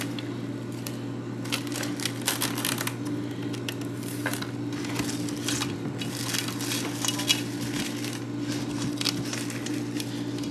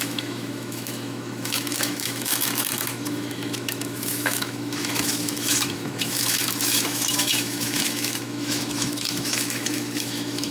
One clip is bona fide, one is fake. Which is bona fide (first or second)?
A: first